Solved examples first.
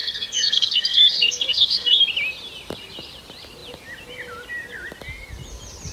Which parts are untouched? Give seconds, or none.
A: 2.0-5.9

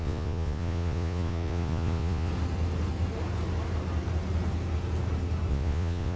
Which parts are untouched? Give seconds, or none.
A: 2.3-5.5